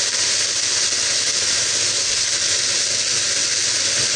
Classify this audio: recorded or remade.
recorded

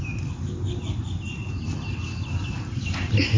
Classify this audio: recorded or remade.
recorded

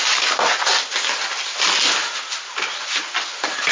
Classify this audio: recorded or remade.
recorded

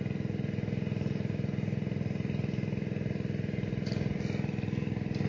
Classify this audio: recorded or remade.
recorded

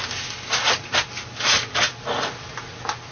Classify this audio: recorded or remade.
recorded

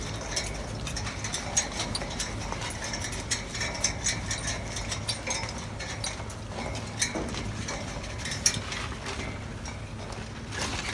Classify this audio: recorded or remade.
recorded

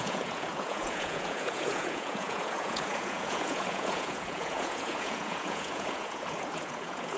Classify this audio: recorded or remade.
remade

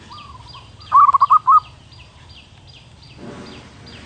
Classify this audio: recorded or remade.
recorded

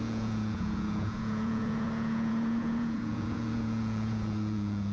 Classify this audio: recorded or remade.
remade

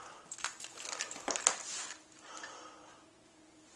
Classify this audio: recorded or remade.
recorded